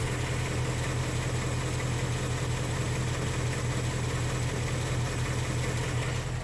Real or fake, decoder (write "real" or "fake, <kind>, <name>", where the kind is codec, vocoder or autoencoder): real